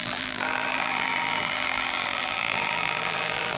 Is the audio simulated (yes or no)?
yes